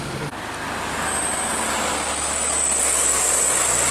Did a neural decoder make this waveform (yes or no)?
no